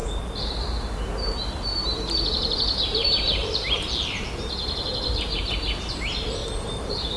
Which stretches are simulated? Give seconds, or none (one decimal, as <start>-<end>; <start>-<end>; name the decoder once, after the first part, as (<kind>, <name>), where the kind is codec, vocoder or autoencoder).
0.0-0.5 (vocoder, BigVGAN v2); 1.7-3.9; 4.6-5.4; 6.4-7.2